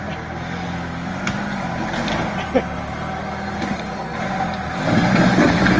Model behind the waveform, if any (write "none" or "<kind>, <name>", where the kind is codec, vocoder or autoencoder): none